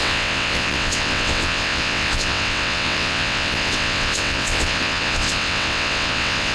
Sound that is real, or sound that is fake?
fake